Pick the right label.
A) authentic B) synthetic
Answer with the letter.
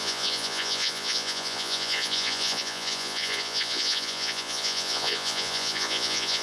B